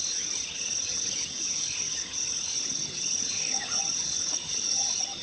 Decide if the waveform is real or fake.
fake